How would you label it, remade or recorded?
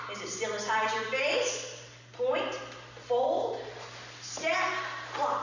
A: recorded